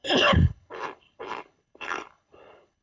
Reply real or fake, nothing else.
fake